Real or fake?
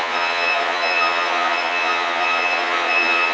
fake